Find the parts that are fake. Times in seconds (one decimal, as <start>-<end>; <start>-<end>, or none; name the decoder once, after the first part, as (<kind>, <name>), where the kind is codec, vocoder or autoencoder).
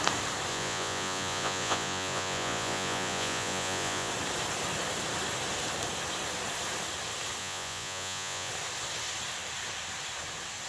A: 0.5-4.1 (vocoder, Vocos); 7.4-8.5